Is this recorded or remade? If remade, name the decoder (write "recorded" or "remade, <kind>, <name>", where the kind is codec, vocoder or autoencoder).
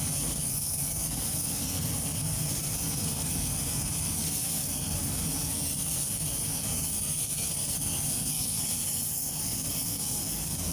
remade, codec, SNAC